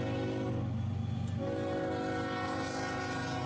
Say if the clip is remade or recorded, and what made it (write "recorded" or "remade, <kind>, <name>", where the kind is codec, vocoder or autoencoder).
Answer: recorded